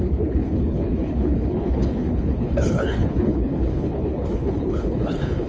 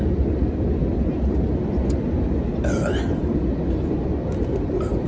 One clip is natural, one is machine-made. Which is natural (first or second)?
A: second